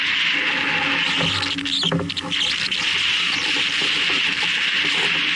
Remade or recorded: recorded